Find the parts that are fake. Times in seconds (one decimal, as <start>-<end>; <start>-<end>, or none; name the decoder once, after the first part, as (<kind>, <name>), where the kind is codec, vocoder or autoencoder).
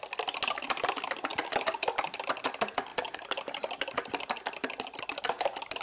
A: none